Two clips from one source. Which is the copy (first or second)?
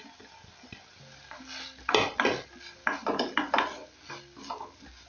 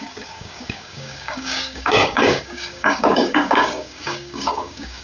second